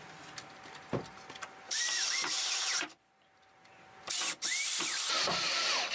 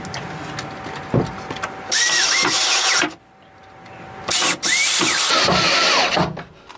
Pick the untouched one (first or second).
second